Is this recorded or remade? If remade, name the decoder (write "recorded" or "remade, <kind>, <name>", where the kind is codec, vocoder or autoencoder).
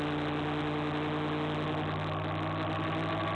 recorded